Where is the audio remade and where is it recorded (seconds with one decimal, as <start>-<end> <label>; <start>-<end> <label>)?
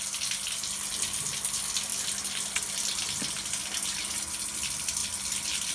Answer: 0.0-5.7 recorded